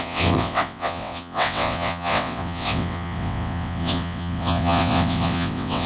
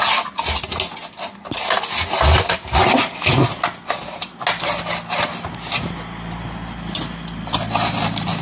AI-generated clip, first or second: first